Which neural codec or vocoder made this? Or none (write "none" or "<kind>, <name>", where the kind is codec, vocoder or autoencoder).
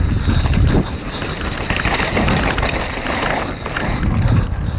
none